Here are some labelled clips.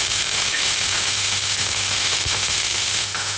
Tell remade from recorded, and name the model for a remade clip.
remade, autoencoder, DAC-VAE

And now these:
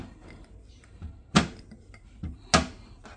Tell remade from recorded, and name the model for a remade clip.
recorded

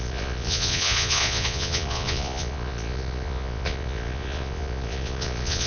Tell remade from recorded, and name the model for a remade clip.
remade, vocoder, Vocos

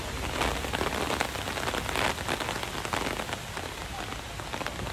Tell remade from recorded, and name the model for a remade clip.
recorded